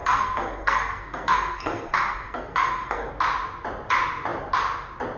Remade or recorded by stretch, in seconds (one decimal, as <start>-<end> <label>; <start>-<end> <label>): 0.0-3.1 remade; 3.1-5.2 recorded